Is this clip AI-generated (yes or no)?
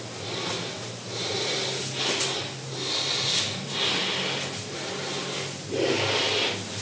no